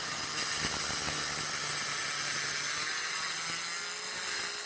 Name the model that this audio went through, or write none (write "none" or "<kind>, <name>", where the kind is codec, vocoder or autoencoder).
none